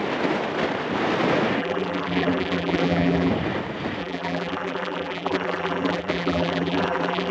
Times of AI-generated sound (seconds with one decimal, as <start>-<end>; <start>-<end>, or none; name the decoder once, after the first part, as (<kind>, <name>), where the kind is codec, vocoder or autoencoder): 1.6-3.3 (vocoder, BigVGAN v2); 4.0-7.3